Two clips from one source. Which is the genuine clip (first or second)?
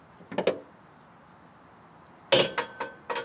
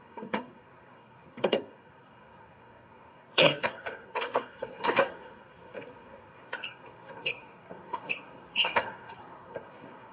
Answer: first